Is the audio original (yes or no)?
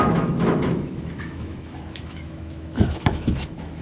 no